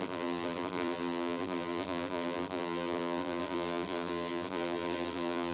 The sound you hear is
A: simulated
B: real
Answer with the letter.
A